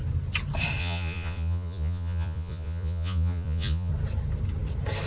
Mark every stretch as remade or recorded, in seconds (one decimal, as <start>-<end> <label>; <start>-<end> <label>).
0.0-0.8 recorded; 0.8-3.9 remade; 3.9-5.1 recorded